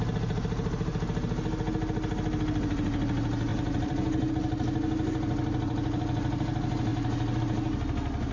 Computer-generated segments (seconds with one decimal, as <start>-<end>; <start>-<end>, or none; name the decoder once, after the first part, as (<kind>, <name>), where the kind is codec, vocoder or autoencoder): 3.5-4.3 (vocoder, BigVGAN v2)